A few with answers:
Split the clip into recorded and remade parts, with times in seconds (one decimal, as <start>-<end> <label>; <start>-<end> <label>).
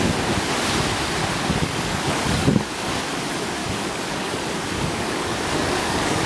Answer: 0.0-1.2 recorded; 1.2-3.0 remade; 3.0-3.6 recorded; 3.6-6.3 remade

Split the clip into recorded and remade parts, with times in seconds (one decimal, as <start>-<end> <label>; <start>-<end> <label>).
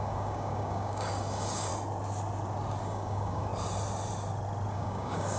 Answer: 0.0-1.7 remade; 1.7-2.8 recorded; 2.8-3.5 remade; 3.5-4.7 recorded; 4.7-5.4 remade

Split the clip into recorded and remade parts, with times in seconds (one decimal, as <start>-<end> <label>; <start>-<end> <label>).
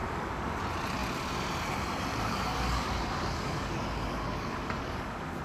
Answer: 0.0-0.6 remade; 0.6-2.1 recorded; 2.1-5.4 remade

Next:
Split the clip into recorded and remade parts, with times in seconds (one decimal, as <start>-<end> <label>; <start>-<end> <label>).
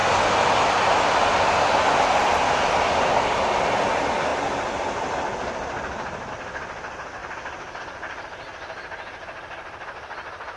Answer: 0.0-10.6 recorded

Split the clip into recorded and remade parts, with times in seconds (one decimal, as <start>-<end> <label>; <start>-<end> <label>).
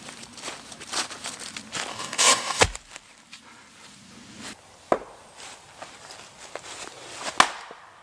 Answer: 0.0-1.9 recorded; 1.9-2.6 remade; 2.6-8.0 recorded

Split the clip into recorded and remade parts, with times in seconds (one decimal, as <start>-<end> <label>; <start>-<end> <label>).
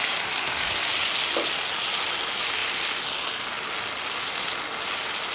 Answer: 0.0-0.7 remade; 0.7-5.3 recorded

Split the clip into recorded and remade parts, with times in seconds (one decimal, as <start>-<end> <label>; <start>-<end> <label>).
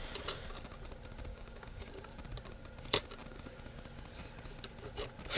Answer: 0.0-1.3 recorded; 1.3-1.9 remade; 1.9-5.4 recorded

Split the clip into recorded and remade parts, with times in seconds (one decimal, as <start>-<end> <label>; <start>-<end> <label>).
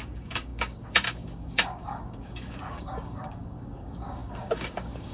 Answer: 0.0-5.1 remade